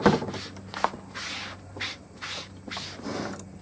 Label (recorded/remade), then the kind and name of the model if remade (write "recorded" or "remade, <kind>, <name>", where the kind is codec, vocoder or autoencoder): recorded